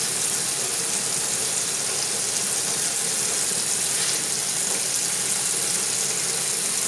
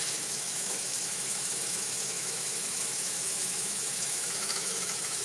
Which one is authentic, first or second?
first